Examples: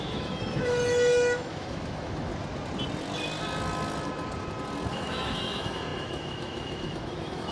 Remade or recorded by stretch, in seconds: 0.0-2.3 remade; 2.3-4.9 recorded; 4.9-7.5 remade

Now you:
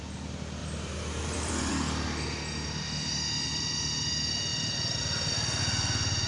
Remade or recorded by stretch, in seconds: 0.0-0.6 recorded; 0.6-1.7 remade; 1.7-4.5 recorded; 4.5-5.6 remade; 5.6-6.3 recorded

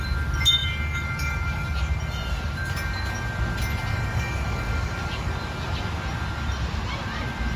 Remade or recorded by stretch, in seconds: 0.0-0.6 recorded; 0.6-1.8 remade; 1.8-3.9 recorded; 3.9-5.3 remade; 5.3-7.6 recorded

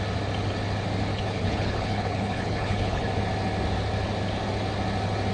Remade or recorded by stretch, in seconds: 0.0-1.1 recorded; 1.1-3.2 remade; 3.2-5.3 recorded